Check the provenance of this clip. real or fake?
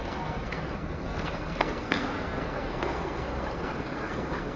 fake